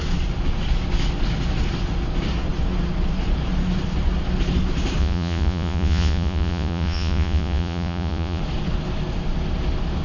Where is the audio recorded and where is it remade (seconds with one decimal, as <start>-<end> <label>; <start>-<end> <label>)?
0.0-5.0 recorded; 5.0-8.4 remade; 8.4-10.0 recorded